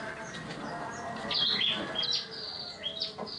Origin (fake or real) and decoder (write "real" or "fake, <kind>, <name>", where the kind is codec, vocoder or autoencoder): real